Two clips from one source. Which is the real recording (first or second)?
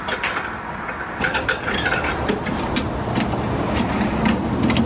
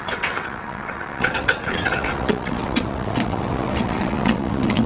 first